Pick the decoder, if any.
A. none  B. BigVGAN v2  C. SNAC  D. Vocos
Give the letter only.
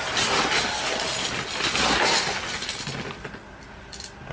A